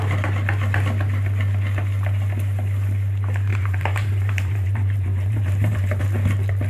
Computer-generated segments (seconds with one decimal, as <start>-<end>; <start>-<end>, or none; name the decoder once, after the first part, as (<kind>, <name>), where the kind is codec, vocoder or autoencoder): 3.5-6.0 (vocoder, BigVGAN v2)

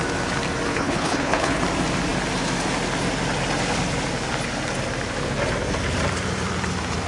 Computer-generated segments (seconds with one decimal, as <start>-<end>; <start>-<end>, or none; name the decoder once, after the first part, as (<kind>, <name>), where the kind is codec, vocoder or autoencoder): 0.7-1.6 (codec, HILCodec)

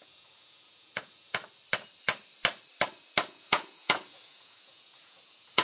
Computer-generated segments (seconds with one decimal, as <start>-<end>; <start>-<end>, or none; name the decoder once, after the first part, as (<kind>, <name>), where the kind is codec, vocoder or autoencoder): 0.0-1.4 (vocoder, Vocos); 3.3-5.6

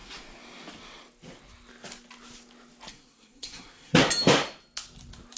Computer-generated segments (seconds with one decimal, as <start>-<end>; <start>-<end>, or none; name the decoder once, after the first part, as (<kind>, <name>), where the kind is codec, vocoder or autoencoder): 2.9-4.0 (codec, SNAC)